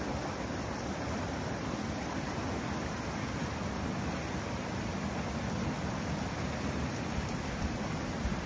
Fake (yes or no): no